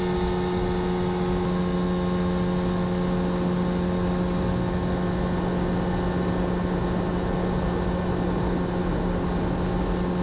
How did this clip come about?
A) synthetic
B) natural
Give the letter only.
B